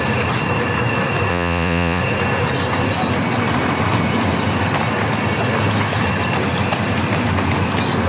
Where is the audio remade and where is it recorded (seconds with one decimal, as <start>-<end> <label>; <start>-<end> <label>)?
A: 0.0-1.3 recorded; 1.3-2.0 remade; 2.0-8.1 recorded